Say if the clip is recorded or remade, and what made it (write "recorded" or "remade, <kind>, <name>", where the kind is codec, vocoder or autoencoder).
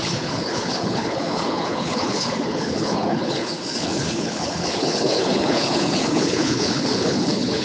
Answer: remade, codec, HILCodec